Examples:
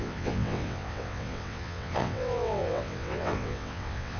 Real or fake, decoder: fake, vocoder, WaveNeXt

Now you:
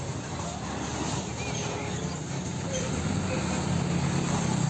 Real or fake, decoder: real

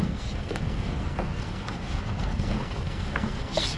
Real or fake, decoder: fake, codec, SNAC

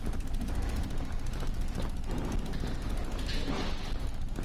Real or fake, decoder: real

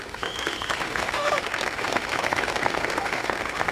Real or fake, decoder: fake, autoencoder, DAC-VAE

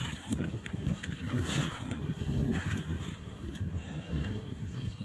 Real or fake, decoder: fake, codec, SNAC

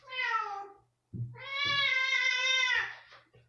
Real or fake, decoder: real